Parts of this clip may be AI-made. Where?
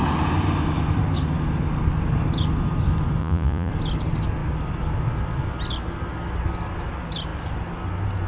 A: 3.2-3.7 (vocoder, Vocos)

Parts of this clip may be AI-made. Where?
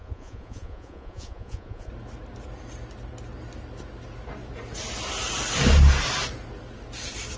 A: 0.0-1.9 (vocoder, Vocos)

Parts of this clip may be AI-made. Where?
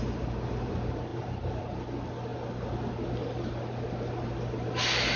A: none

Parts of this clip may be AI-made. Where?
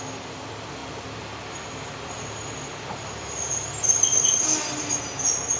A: none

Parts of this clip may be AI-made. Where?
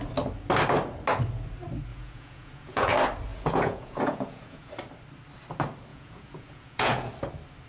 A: 1.9-2.9 (vocoder, Vocos); 3.3-4.7; 5.9-7.1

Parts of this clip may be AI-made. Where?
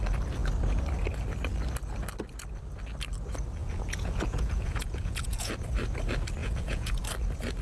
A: 3.6-5.5 (vocoder, Vocos); 6.4-7.0